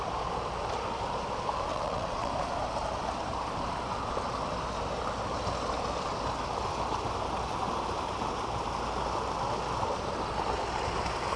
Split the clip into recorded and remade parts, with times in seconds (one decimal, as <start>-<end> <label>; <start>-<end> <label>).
0.0-1.7 recorded; 1.7-2.3 remade; 2.3-11.4 recorded